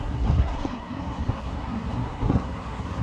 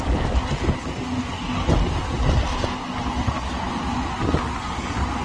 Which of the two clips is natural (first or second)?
second